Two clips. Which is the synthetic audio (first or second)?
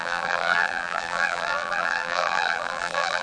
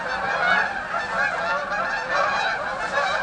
first